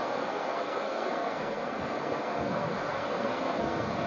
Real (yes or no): no